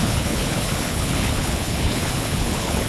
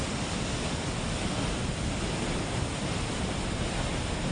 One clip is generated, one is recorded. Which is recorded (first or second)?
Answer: second